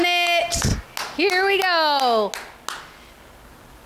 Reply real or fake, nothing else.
real